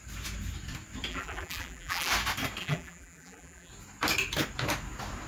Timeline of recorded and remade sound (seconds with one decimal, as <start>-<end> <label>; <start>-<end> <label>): 0.0-1.1 recorded; 1.1-2.1 remade; 2.1-2.6 recorded; 2.6-3.7 remade; 3.7-5.3 recorded